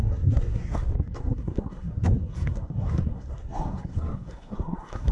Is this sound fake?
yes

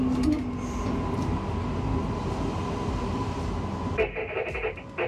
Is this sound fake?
no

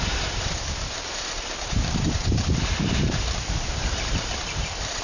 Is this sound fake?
yes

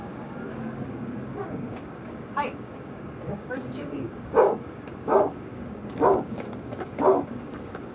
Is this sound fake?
yes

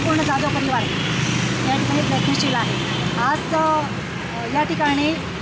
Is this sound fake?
no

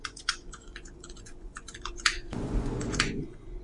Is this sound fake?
yes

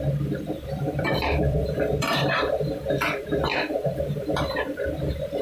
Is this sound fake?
yes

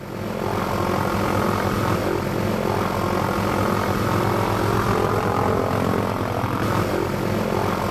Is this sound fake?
no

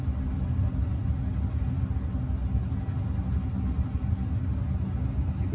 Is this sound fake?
no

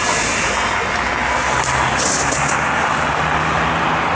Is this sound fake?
no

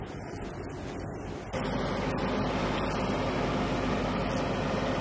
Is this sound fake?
no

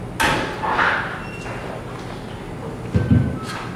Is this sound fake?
no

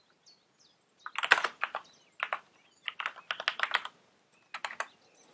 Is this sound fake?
no